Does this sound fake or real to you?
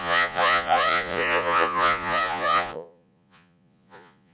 fake